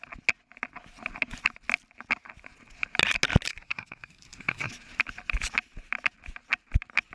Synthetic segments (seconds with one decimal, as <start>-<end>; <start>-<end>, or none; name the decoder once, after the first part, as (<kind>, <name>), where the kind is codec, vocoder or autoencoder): 3.5-4.7 (codec, SNAC)